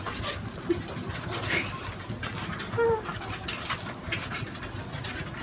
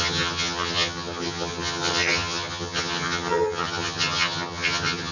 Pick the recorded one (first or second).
first